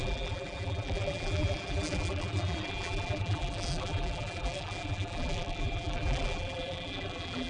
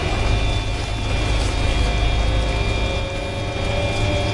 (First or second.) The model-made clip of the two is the first